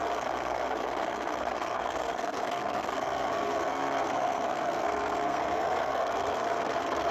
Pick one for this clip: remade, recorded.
remade